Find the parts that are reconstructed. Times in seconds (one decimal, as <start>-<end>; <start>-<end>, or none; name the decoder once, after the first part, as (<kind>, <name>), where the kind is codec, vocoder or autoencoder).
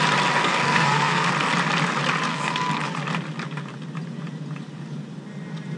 0.4-1.3 (codec, SNAC); 2.3-2.9